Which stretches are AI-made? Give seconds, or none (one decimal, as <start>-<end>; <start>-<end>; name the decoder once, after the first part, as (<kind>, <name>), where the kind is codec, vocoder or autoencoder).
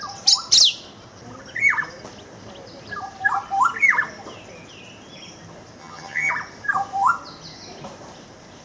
5.8-6.3 (vocoder, HiFi-GAN)